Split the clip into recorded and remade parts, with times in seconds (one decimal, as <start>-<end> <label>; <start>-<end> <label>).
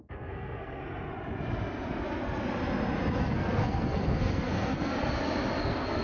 0.0-0.8 remade; 0.8-3.2 recorded; 3.2-4.9 remade; 4.9-5.6 recorded; 5.6-6.0 remade